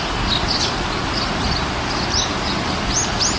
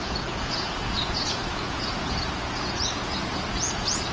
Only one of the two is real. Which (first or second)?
first